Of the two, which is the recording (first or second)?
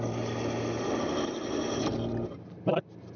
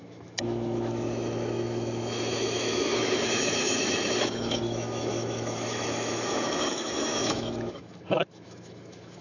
first